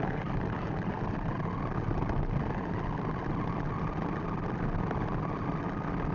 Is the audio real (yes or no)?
yes